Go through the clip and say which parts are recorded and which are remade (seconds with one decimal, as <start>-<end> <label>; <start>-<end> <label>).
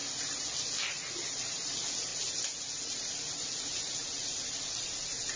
0.0-5.4 recorded